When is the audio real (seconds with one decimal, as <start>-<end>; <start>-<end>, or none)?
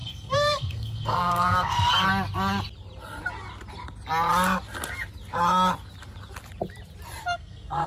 1.9-7.2